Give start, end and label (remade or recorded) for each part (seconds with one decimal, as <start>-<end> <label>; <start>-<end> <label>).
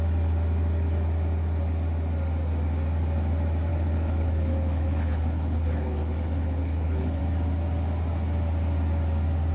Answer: 0.0-3.7 recorded; 3.7-7.2 remade; 7.2-9.5 recorded